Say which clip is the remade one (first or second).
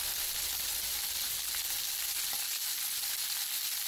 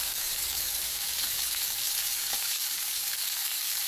second